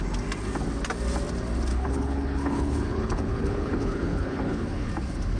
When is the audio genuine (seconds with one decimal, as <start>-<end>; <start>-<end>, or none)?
0.0-1.7; 4.9-5.4